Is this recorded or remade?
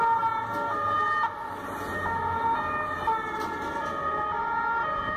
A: recorded